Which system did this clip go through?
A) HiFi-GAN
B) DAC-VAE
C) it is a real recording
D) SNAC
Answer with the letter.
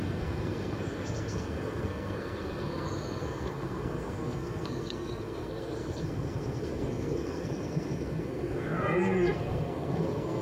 D